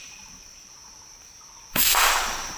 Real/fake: fake